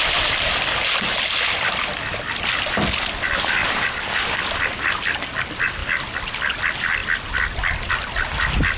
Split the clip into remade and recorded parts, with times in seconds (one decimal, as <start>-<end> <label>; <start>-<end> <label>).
0.0-8.8 recorded

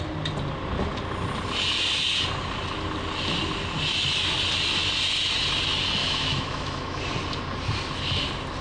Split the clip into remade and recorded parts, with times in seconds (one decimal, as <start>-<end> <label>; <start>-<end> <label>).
0.0-6.0 recorded; 6.0-7.0 remade; 7.0-8.6 recorded

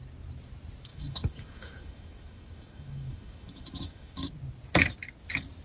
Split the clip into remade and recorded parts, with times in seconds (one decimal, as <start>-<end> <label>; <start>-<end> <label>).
0.0-0.9 recorded; 0.9-4.3 remade; 4.3-5.6 recorded

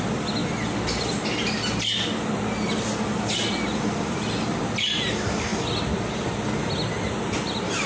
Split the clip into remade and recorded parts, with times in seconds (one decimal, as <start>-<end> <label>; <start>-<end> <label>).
0.0-7.9 recorded

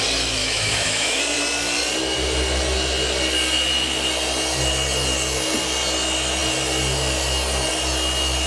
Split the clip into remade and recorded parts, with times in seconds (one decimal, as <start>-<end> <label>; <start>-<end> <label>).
0.0-0.4 recorded; 0.4-1.2 remade; 1.2-8.5 recorded

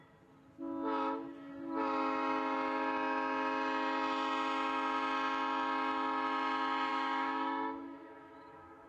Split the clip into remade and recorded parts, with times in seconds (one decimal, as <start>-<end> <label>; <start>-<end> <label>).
0.0-6.9 recorded; 6.9-8.9 remade